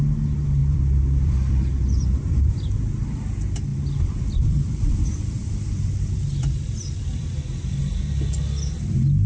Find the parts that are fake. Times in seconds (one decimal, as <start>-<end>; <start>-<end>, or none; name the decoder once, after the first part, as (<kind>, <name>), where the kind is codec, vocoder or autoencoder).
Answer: 0.6-2.7 (vocoder, BigVGAN v2); 3.7-7.4